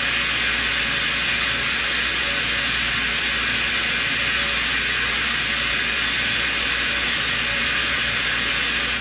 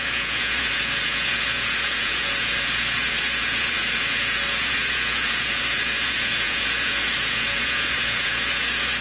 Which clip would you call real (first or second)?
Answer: first